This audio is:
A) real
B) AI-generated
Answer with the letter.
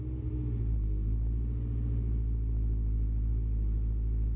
A